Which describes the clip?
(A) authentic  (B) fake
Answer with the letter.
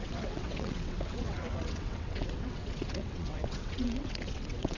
B